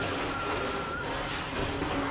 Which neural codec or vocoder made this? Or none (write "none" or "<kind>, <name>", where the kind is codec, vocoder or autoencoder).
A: none